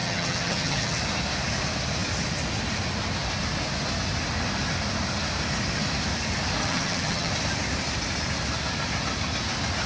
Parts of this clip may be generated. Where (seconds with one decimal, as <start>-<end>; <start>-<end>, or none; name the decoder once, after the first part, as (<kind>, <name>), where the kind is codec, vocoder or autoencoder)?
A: 0.0-1.0 (vocoder, HiFi-GAN); 6.6-7.3